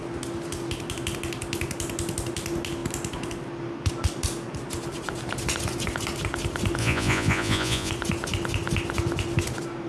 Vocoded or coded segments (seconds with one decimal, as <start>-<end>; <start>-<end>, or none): 6.8-7.9